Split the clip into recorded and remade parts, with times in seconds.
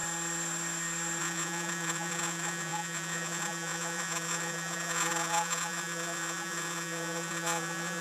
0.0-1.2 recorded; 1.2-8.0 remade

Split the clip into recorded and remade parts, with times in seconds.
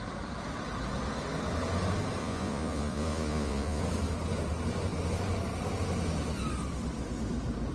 0.0-2.2 recorded; 2.2-3.8 remade; 3.8-7.7 recorded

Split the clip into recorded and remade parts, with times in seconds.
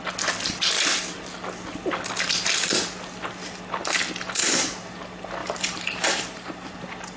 0.0-5.4 recorded; 5.4-6.8 remade; 6.8-7.2 recorded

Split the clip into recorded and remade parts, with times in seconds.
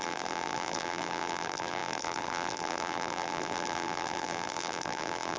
0.0-5.4 remade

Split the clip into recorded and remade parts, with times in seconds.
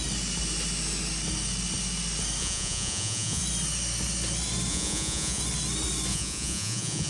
0.0-2.4 recorded; 2.4-3.4 remade; 3.4-4.7 recorded; 4.7-5.4 remade; 5.4-6.1 recorded; 6.1-7.1 remade